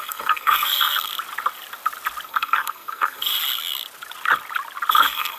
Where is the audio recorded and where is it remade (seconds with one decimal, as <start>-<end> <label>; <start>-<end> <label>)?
0.0-1.1 remade; 1.1-2.3 recorded; 2.3-3.3 remade; 3.3-4.9 recorded; 4.9-5.4 remade